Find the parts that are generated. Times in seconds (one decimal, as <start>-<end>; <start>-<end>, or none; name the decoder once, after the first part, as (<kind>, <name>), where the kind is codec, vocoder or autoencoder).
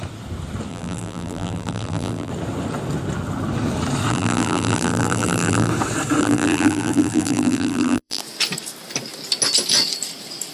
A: 0.7-2.3 (vocoder, BigVGAN v2); 4.1-5.7; 6.2-8.2